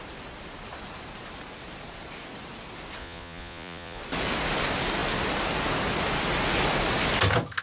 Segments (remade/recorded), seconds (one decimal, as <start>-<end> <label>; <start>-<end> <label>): 0.0-3.0 recorded; 3.0-4.0 remade; 4.0-7.6 recorded